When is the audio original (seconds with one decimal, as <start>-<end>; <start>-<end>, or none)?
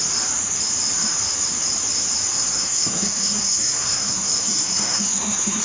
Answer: 0.0-2.3